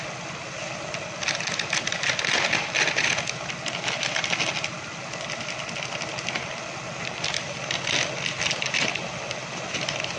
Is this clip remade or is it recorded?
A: recorded